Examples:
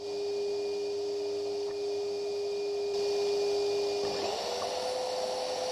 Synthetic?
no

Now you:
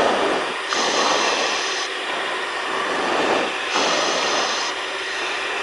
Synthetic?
yes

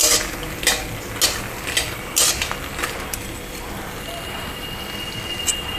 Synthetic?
no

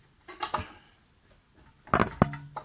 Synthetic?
no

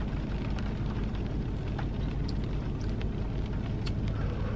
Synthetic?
no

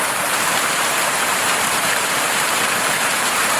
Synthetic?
yes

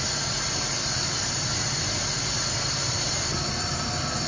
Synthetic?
yes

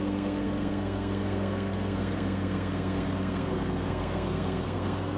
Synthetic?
yes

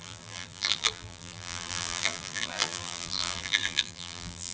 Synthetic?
yes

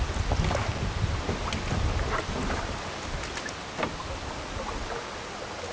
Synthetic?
no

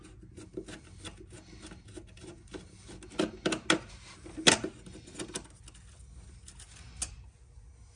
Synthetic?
no